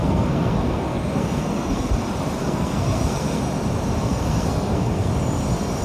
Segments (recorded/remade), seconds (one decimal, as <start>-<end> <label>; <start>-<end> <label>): 0.0-1.9 remade; 1.9-2.4 recorded; 2.4-3.4 remade; 3.4-4.0 recorded; 4.0-5.1 remade; 5.1-5.8 recorded